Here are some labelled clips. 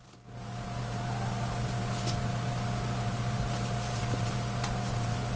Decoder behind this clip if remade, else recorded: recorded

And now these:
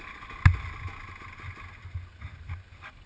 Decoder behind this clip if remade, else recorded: recorded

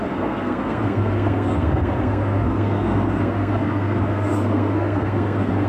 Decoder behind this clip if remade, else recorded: remade, codec, SNAC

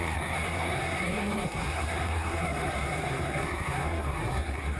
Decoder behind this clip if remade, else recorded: remade, codec, SNAC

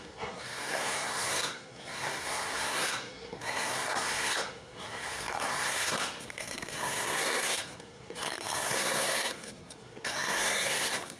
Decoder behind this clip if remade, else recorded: remade, codec, SNAC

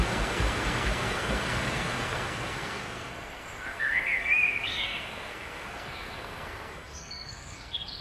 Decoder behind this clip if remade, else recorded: remade, codec, SNAC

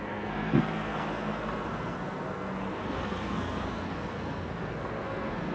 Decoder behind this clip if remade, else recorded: remade, codec, SNAC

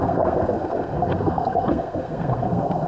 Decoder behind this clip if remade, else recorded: remade, codec, SNAC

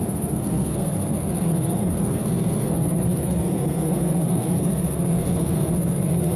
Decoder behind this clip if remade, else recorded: remade, codec, SNAC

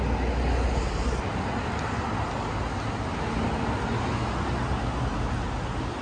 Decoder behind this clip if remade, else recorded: recorded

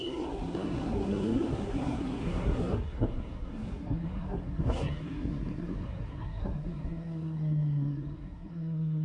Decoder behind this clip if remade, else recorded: remade, codec, SNAC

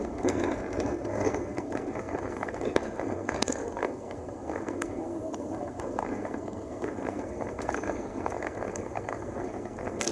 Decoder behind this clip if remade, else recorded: remade, codec, SNAC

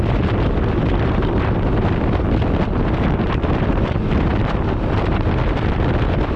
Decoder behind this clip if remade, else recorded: recorded